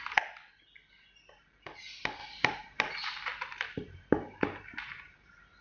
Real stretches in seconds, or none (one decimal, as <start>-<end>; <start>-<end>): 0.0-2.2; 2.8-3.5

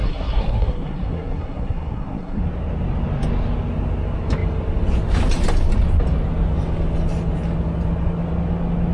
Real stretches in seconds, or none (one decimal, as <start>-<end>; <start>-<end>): 2.4-8.9

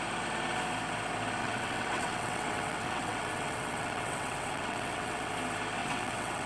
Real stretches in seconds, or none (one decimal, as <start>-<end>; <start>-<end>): 0.0-1.4; 5.3-5.8